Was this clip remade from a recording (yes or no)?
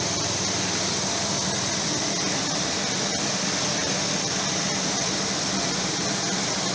no